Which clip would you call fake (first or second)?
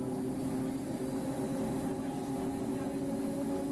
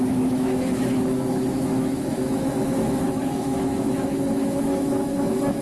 second